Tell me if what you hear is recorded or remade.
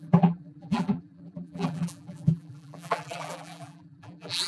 remade